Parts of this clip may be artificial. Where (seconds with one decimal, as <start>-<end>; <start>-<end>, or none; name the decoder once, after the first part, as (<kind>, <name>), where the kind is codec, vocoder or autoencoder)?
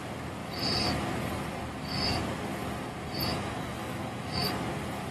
3.3-4.5 (autoencoder, DAC-VAE)